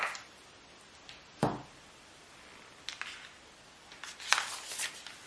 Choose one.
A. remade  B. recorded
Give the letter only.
B